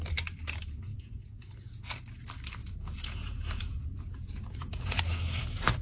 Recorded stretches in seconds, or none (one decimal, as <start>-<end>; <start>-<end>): 0.0-0.9; 2.0-2.6; 5.0-5.8